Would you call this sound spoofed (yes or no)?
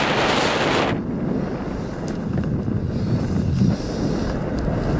no